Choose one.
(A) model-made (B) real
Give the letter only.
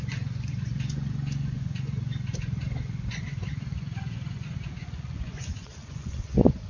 A